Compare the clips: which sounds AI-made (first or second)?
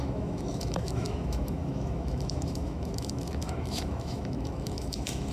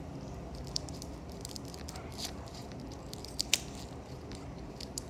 first